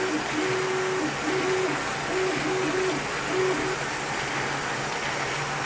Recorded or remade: recorded